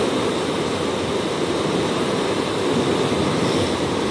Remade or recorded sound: recorded